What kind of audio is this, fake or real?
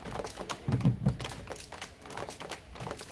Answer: fake